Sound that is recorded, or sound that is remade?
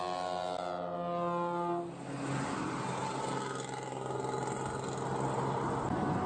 recorded